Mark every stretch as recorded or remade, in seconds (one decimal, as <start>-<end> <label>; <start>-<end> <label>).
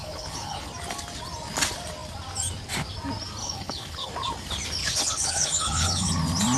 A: 0.0-0.7 remade; 0.7-3.4 recorded; 3.4-4.1 remade; 4.1-4.8 recorded; 4.8-6.1 remade; 6.1-6.6 recorded